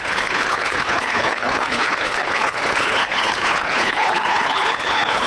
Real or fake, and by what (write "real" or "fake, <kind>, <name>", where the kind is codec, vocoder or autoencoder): fake, codec, HILCodec